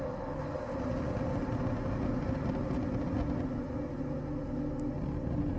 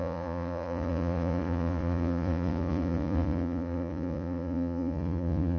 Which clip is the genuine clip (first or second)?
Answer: first